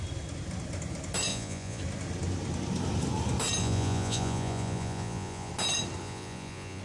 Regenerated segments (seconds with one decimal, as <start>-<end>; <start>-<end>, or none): 1.3-1.8; 3.6-5.5; 6.0-6.8

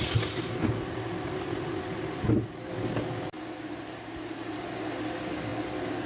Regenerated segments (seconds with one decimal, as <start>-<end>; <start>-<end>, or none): none